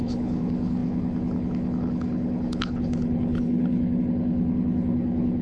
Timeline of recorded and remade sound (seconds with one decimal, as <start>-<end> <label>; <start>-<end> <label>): 0.0-5.4 remade